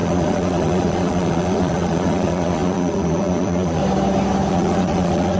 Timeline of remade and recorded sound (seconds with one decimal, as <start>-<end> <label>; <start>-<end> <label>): 0.0-3.8 remade; 3.8-4.5 recorded; 4.5-5.4 remade